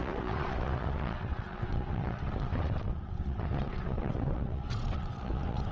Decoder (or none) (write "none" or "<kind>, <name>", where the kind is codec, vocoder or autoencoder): vocoder, WaveNeXt